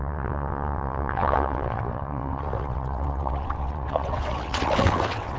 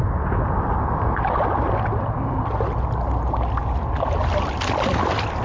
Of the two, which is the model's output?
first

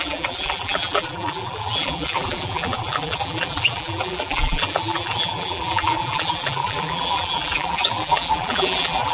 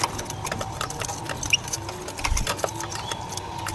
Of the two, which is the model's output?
first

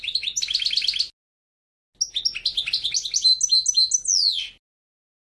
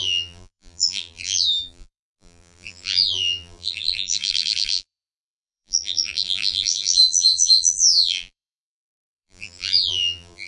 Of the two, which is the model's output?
second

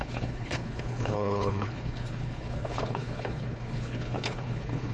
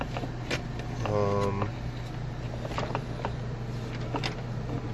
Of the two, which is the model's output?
first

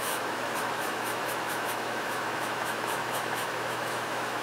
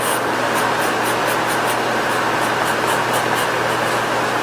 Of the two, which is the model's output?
first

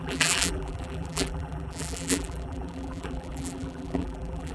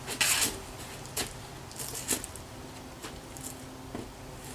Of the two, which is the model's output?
first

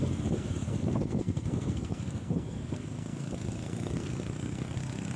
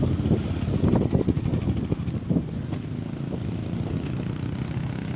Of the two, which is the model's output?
first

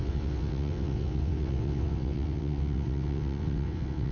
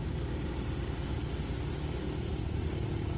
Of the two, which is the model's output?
first